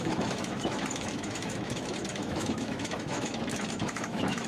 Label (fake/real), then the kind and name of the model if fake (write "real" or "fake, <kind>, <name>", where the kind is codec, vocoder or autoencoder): fake, autoencoder, DAC-VAE